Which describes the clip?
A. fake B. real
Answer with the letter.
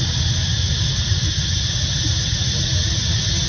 B